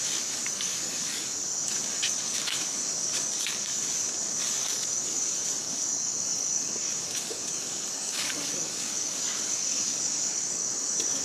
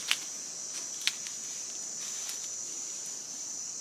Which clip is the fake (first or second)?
first